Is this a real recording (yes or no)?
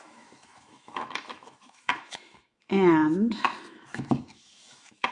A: no